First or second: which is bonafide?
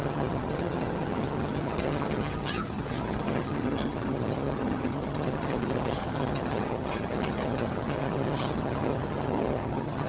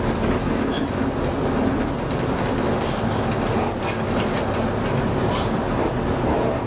second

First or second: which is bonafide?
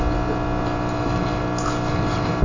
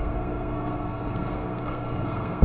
first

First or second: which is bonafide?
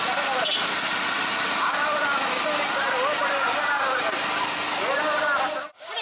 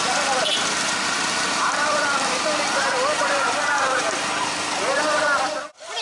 first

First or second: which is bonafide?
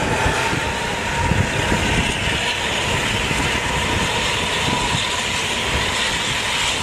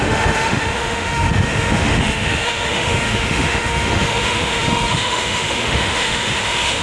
first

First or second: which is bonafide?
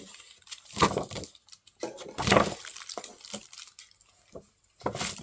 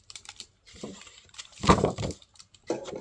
first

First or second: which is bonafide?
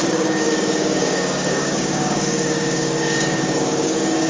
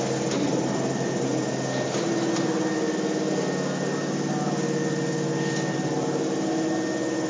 second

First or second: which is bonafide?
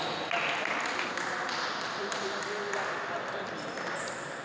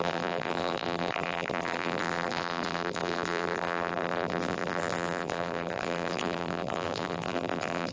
first